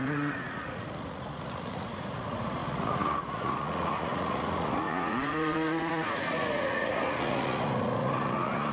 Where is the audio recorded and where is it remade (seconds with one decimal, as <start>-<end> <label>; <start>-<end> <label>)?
0.0-8.7 remade